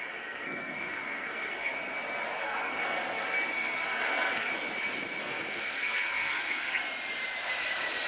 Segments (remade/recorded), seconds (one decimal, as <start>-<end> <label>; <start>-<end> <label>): 0.0-1.7 remade; 1.7-2.4 recorded; 2.4-4.5 remade; 4.5-5.2 recorded; 5.2-6.8 remade; 6.8-8.1 recorded